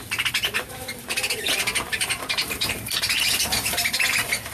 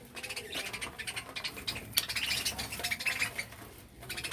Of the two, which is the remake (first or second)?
first